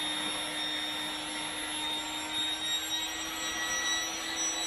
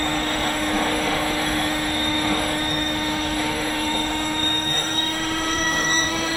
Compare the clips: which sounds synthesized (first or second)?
second